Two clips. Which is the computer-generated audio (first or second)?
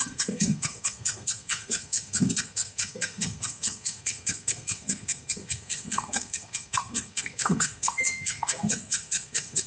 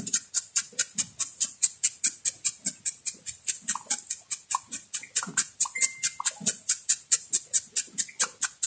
first